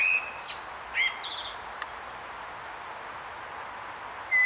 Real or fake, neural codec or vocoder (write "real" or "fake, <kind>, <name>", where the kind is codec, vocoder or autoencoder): real